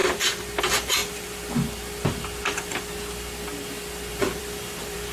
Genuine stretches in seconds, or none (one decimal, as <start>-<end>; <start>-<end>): 0.0-0.6; 1.0-4.1